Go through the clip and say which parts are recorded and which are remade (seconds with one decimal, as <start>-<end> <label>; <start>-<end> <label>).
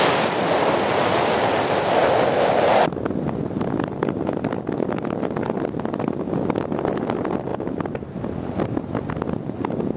0.0-10.0 recorded